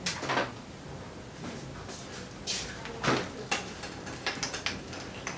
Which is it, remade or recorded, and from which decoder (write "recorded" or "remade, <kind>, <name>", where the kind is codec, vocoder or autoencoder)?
recorded